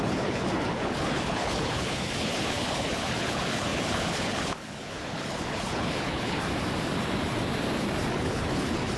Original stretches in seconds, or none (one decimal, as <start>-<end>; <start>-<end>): 6.5-8.1